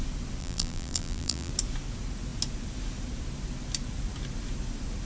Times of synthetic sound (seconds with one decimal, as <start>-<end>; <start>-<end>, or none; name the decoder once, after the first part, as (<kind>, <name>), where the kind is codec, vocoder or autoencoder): 0.4-1.5 (vocoder, BigVGAN v2)